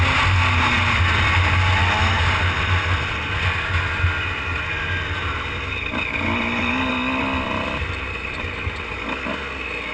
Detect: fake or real real